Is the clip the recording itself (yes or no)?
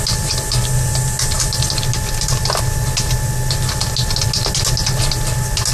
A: yes